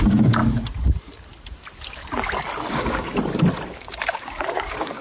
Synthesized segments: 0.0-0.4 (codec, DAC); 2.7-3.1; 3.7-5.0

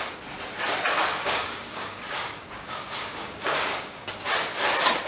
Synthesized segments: 1.2-4.3 (codec, DAC)

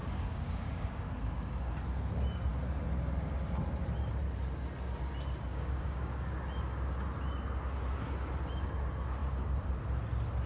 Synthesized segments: 0.0-1.1 (codec, DAC); 5.5-6.3

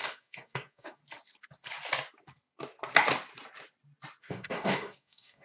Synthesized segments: 0.0-1.0 (codec, DAC); 4.2-5.4

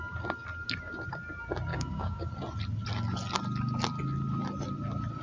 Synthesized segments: 1.7-2.3 (codec, DAC)

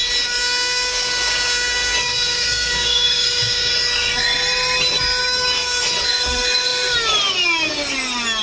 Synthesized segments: 0.4-3.7 (codec, DAC); 5.2-5.8

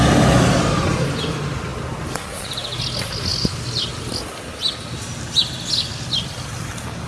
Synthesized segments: none

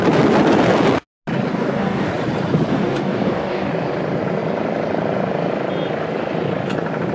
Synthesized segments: 1.5-2.1 (codec, DAC); 2.7-3.7